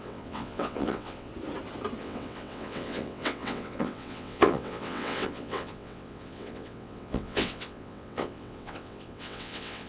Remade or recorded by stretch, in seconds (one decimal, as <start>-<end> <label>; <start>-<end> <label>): 0.0-1.3 remade; 1.3-2.0 recorded; 2.0-9.9 remade